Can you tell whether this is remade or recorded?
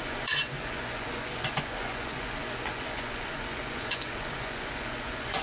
remade